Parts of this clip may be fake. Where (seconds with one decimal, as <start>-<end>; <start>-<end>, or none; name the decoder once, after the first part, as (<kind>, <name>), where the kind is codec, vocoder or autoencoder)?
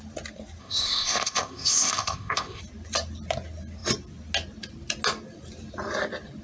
0.6-2.6 (codec, ZipCodec)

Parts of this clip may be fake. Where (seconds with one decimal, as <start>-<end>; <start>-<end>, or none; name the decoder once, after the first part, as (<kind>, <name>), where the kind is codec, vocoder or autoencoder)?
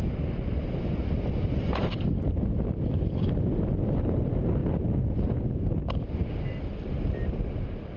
none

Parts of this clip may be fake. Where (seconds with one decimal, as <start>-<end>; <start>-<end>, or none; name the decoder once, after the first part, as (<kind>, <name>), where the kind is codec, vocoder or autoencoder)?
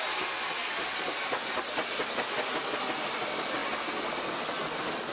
none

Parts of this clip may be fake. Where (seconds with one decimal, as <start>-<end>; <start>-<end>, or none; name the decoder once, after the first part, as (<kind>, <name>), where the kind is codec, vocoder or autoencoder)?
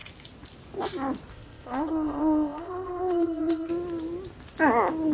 1.3-3.7 (codec, ZipCodec)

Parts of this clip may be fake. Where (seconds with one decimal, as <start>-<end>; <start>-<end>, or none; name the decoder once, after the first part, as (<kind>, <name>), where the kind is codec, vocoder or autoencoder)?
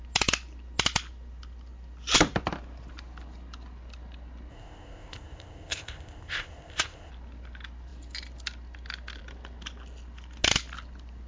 4.5-7.1 (codec, ZipCodec)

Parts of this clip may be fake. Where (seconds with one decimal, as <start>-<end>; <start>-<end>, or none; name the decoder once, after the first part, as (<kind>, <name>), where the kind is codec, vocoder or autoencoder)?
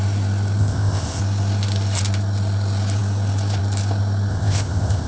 0.6-1.2 (codec, ZipCodec); 4.3-5.1